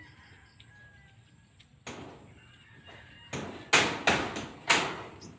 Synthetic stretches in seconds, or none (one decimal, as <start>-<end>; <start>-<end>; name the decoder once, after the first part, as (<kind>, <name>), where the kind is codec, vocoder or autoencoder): none